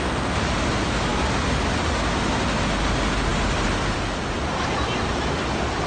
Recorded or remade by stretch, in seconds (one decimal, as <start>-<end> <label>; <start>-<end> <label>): 0.0-5.9 recorded